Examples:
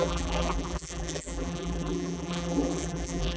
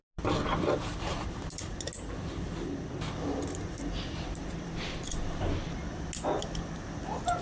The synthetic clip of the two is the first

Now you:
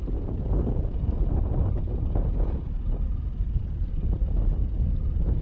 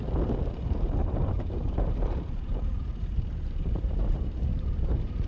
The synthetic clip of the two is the second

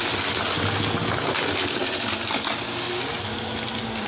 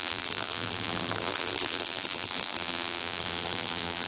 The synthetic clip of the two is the second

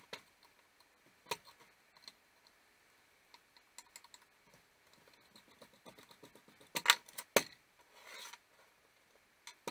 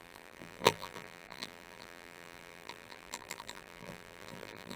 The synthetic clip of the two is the second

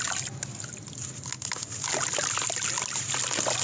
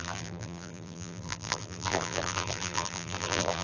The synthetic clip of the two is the second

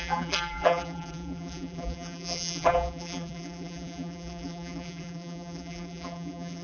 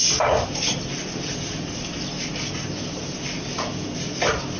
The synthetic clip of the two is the first